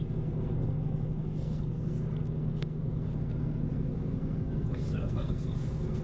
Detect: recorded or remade remade